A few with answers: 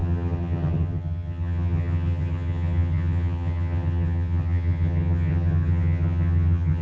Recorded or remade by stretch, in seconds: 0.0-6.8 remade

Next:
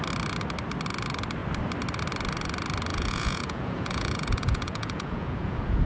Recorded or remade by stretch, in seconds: 0.0-2.9 recorded; 2.9-5.9 remade